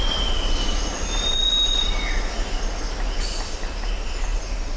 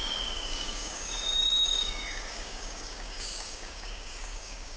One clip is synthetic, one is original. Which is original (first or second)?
first